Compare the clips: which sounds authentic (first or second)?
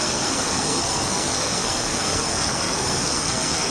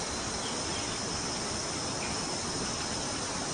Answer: second